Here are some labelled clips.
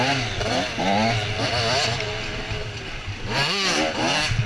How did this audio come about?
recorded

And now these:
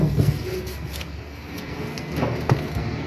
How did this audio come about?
remade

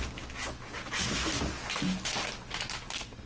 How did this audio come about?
recorded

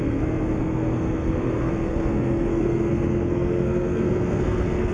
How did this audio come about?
remade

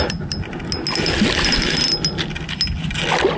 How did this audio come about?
recorded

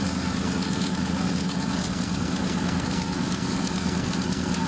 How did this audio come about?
remade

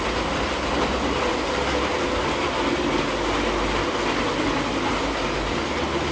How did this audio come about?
recorded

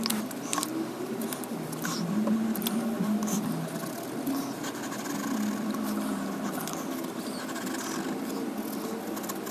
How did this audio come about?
recorded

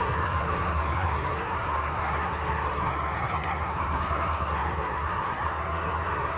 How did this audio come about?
remade